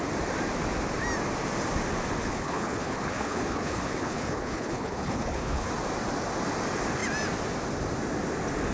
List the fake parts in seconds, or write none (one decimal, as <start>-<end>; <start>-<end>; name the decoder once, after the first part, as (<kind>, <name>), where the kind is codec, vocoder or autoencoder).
2.2-5.7 (codec, HILCodec)